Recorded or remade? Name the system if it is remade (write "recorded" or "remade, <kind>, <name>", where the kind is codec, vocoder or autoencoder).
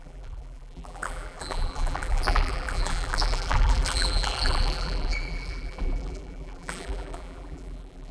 remade, vocoder, BigVGAN v2